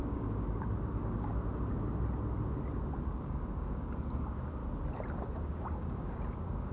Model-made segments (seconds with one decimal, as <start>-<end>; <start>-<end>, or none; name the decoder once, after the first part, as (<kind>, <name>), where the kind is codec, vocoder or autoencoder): 0.0-1.3 (codec, DAC); 3.1-4.6; 5.2-6.7